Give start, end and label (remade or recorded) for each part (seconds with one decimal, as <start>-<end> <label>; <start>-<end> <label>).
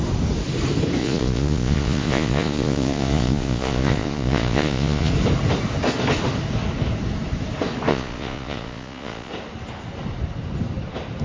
0.0-1.0 recorded; 1.0-5.1 remade; 5.1-7.9 recorded; 7.9-9.3 remade; 9.3-11.2 recorded